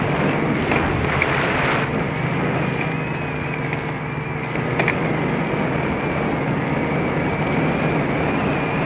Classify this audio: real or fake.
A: real